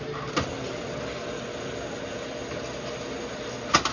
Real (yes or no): yes